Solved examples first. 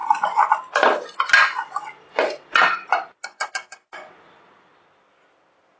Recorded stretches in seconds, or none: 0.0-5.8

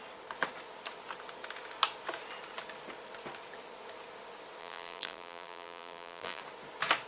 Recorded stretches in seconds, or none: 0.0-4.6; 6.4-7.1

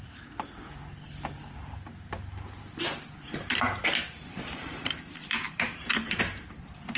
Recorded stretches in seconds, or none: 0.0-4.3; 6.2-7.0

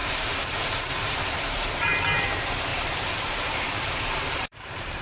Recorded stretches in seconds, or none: 1.7-2.7